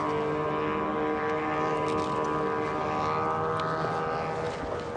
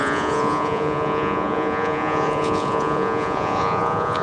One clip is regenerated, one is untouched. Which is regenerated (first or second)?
second